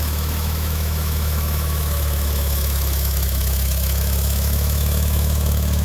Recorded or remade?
remade